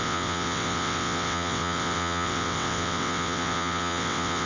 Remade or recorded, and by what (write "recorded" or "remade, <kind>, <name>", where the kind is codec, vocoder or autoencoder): remade, vocoder, WaveNeXt